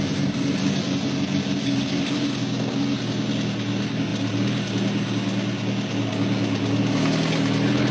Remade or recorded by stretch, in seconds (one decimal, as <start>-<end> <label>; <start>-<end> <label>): 0.0-7.9 recorded